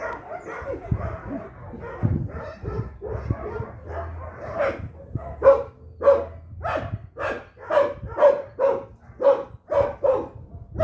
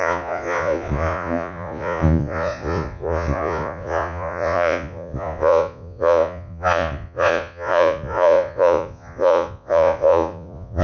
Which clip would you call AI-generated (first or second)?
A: second